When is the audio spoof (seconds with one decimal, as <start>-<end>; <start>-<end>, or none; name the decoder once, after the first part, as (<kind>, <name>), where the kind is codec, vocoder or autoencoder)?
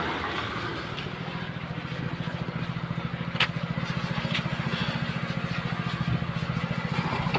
none